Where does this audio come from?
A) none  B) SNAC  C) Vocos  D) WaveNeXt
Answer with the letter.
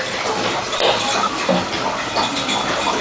A